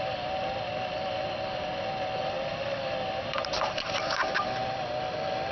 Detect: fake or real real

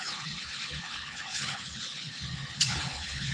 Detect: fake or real fake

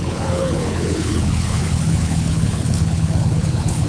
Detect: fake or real fake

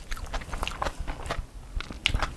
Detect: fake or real real